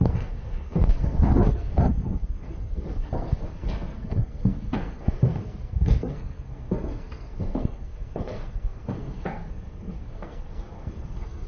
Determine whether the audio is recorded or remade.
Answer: remade